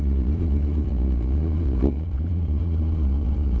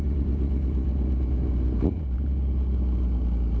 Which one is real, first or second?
second